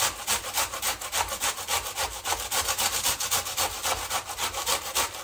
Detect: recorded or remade recorded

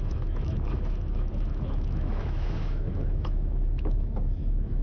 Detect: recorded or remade remade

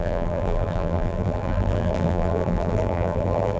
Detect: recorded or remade remade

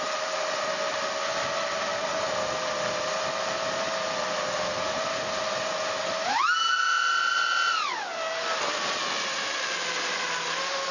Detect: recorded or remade recorded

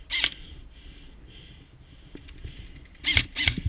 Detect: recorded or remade recorded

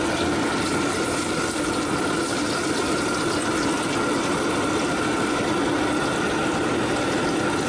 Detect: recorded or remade recorded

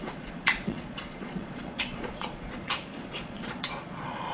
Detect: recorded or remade remade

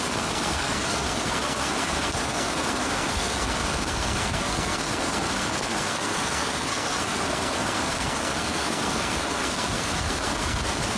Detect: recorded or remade remade